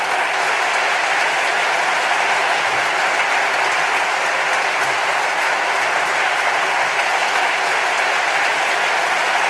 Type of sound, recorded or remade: recorded